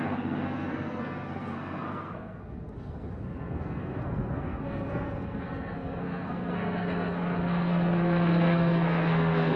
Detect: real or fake fake